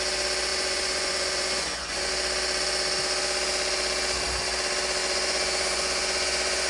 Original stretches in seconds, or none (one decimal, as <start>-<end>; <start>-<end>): 0.0-0.5; 2.1-5.0